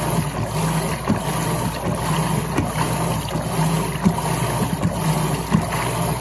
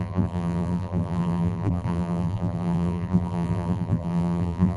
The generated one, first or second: second